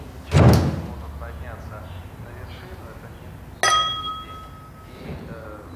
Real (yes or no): yes